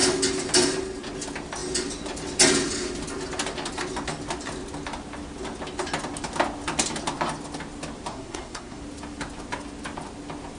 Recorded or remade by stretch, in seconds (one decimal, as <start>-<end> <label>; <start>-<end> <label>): 0.0-8.1 recorded; 8.1-8.8 remade; 8.8-10.6 recorded